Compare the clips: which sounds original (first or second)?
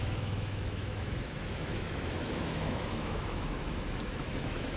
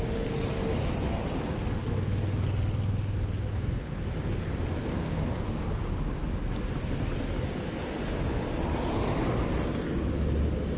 second